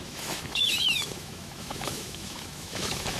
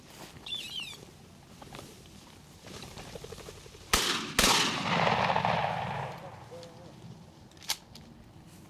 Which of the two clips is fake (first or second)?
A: first